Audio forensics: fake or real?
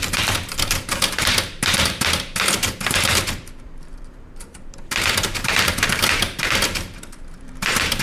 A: fake